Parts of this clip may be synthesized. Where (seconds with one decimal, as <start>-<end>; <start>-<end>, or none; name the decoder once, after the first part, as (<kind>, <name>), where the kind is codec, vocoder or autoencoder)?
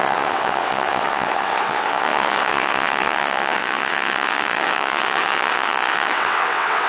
0.0-6.9 (vocoder, WaveNeXt)